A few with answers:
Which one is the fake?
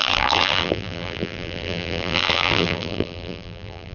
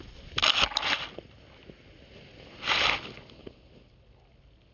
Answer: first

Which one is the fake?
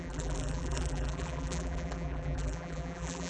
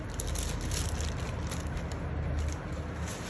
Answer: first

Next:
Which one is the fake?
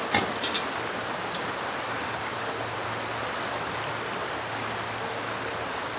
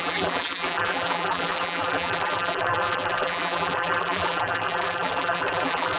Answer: second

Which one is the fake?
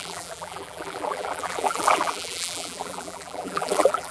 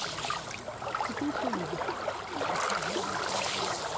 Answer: first